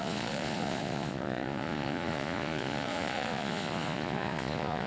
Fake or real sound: fake